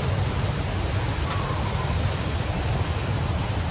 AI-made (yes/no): no